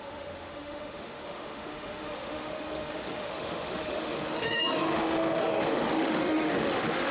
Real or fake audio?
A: fake